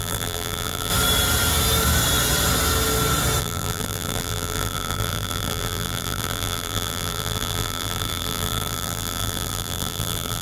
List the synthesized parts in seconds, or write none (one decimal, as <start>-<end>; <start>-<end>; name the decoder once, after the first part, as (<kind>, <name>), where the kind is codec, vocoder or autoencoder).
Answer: 0.0-0.9 (vocoder, BigVGAN v2); 3.4-10.4